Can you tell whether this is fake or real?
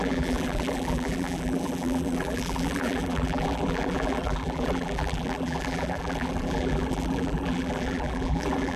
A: fake